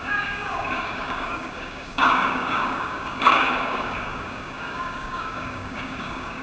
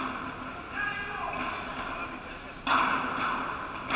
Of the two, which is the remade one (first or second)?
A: first